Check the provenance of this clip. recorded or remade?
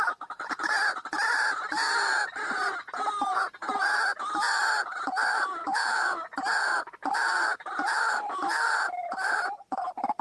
recorded